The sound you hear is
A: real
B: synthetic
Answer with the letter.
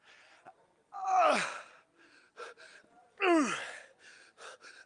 A